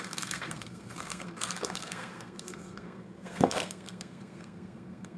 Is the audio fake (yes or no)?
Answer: yes